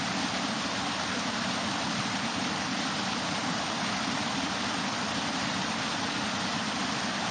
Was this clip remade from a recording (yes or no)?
no